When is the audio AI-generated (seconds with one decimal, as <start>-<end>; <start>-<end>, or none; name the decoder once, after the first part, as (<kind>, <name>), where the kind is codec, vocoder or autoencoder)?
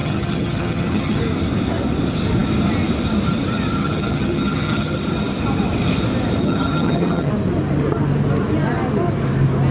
0.0-1.2 (vocoder, HiFi-GAN); 3.8-5.0; 6.4-7.3